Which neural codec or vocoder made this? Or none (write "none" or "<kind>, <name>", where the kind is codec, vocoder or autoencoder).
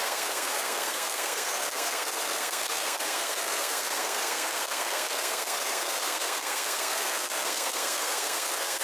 codec, SNAC